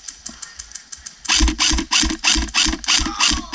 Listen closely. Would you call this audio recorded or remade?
recorded